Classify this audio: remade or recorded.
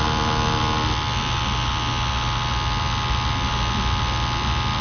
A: recorded